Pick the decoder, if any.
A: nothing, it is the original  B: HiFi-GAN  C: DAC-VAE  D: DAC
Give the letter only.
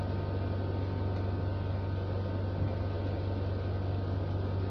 A